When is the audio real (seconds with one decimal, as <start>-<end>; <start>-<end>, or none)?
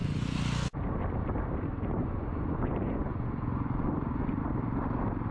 0.0-2.0; 4.4-5.3